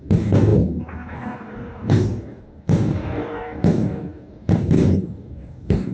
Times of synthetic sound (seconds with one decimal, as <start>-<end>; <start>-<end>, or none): 0.0-5.9